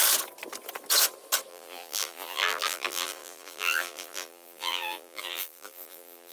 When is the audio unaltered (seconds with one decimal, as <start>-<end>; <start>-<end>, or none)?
0.0-1.5